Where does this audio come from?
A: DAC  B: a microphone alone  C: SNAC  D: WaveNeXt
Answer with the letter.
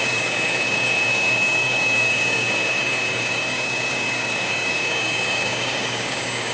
A